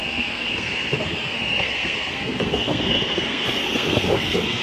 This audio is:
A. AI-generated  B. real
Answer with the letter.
A